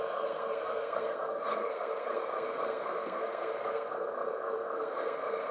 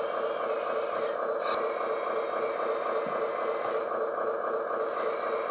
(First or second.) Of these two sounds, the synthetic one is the first